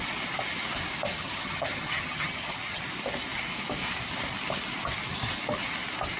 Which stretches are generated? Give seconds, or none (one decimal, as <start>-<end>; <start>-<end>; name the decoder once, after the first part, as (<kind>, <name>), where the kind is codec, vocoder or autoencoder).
1.2-2.8 (vocoder, HiFi-GAN)